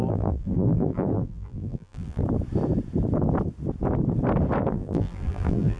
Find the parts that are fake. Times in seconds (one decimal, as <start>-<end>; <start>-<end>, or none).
0.0-2.2; 4.7-5.8